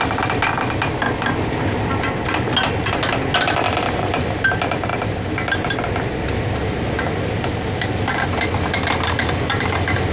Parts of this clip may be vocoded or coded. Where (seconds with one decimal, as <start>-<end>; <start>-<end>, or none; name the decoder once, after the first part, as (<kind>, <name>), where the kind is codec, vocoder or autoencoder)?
none